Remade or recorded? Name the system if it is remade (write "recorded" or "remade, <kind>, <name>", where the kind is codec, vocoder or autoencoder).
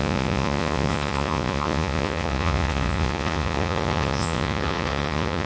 remade, vocoder, Vocos